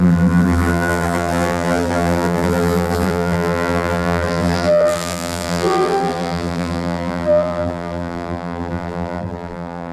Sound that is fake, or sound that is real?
fake